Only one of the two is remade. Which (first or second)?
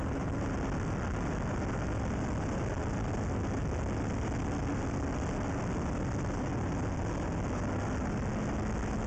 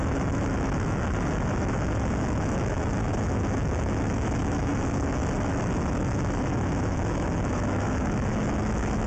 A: second